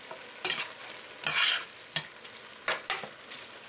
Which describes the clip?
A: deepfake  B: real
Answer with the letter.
B